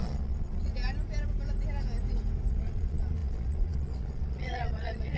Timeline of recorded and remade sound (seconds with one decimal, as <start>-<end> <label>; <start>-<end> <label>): 0.0-0.7 remade; 0.7-2.5 recorded; 2.5-5.2 remade